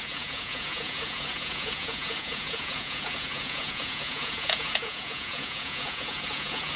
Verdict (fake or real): fake